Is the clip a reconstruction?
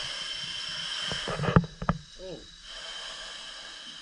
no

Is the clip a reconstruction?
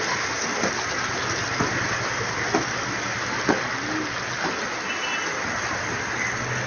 no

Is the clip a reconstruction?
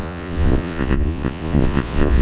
yes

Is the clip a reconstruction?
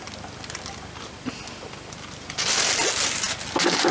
no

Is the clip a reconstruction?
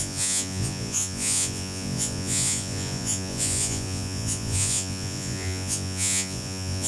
yes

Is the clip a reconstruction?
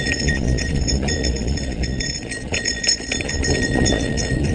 yes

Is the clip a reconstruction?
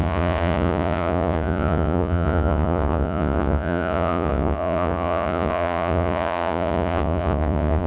yes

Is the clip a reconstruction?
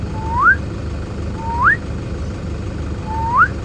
no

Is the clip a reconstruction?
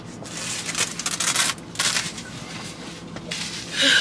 no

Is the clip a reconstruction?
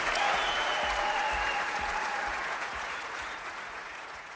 yes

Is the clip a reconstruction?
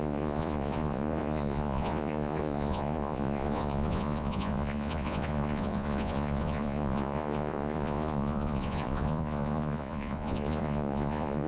yes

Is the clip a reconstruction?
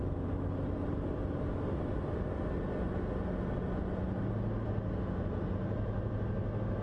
no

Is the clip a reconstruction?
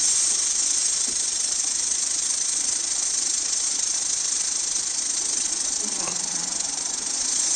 yes